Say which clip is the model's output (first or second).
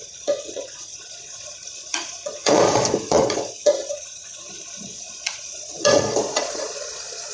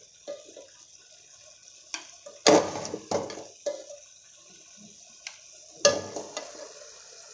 first